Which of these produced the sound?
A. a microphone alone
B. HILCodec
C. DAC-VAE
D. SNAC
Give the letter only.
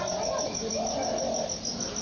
A